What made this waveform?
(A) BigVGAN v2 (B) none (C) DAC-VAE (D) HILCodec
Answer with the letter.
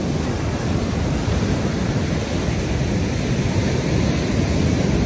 B